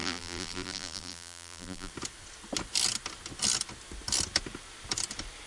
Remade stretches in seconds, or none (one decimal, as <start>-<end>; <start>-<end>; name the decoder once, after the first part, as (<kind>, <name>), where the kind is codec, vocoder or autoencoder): 0.0-1.9 (vocoder, BigVGAN v2)

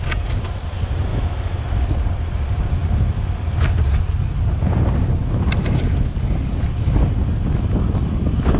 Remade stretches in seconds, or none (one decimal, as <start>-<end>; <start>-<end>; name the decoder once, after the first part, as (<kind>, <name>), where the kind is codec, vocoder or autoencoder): 1.1-1.6 (autoencoder, DAC-VAE)

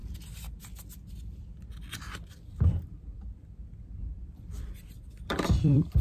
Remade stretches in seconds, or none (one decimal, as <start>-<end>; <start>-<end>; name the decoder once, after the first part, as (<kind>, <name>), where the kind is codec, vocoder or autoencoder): 3.4-6.0 (vocoder, BigVGAN v2)

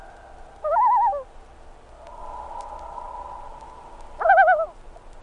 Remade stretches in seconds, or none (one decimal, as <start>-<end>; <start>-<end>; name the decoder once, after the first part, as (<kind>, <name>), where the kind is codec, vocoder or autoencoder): none

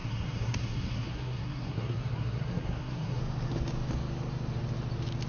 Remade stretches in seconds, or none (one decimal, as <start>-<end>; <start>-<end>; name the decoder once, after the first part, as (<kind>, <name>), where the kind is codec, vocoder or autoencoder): 0.0-3.2 (codec, SNAC)

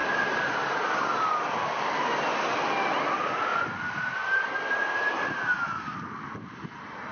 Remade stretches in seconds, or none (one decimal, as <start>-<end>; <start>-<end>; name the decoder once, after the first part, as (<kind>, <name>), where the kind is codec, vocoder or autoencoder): none

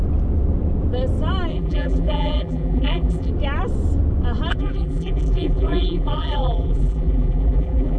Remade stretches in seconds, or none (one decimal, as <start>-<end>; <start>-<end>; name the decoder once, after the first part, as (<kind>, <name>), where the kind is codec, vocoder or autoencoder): 1.5-3.3 (vocoder, BigVGAN v2); 4.5-8.0